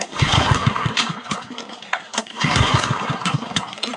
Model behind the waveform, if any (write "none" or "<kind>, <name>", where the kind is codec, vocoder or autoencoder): codec, SNAC